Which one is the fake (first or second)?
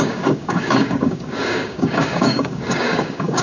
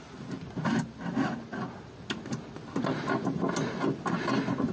first